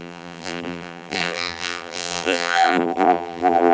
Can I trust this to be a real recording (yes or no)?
no